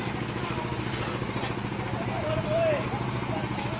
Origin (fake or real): real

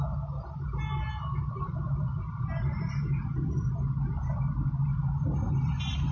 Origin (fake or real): real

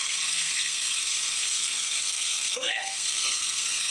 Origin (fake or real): fake